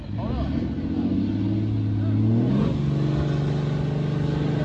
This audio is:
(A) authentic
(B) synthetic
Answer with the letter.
A